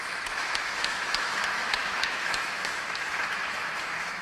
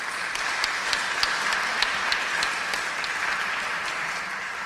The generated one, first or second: first